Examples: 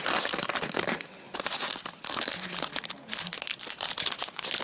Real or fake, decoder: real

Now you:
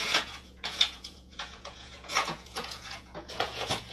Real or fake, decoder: fake, vocoder, Vocos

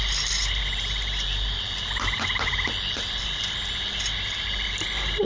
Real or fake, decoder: real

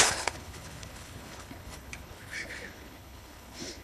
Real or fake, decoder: fake, codec, HILCodec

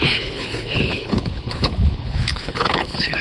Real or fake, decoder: fake, codec, HILCodec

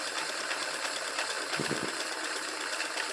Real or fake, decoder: real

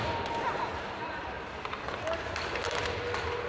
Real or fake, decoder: real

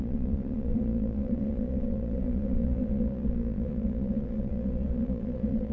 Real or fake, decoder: fake, vocoder, Vocos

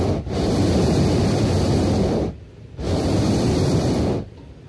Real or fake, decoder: real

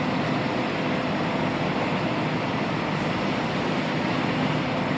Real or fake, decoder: real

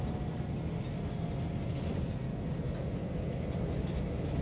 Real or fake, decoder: real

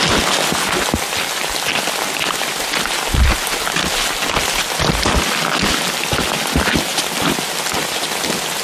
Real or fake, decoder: real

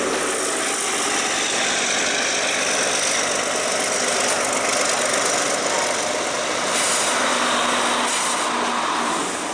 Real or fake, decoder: real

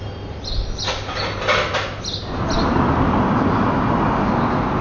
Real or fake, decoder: real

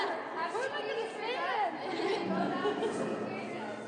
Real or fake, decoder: real